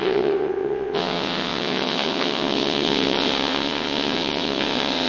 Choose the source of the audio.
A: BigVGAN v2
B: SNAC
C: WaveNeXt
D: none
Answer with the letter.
C